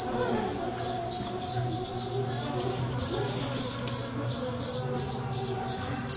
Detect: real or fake real